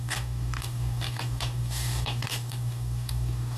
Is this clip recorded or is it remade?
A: remade